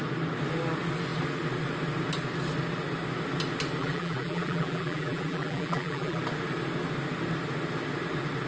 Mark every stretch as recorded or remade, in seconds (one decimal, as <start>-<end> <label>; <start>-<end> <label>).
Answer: 0.0-3.8 recorded; 3.8-6.2 remade; 6.2-8.5 recorded

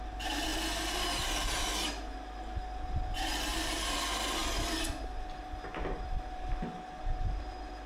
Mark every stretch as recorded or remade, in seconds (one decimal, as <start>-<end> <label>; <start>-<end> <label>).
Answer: 0.0-7.9 recorded

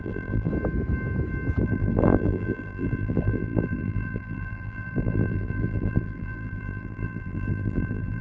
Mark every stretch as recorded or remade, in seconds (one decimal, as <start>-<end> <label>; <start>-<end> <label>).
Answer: 0.0-0.5 remade; 0.5-1.6 recorded; 1.6-8.2 remade

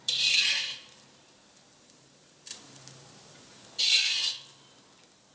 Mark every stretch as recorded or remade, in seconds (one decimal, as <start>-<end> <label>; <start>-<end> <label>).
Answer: 0.0-4.2 remade; 4.2-5.3 recorded